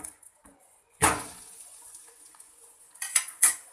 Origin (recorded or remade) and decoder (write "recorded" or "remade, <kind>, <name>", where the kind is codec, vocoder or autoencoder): remade, vocoder, Vocos